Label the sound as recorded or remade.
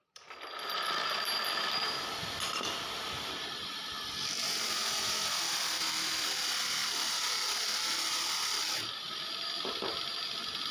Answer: remade